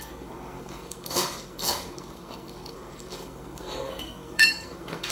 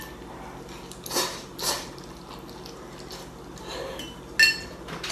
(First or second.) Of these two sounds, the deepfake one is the first